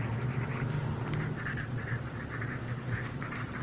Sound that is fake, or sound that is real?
real